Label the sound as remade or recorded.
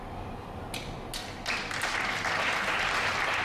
recorded